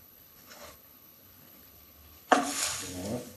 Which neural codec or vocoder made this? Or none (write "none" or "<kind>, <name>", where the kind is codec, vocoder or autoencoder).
codec, HILCodec